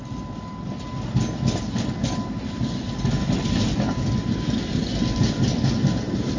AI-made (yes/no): no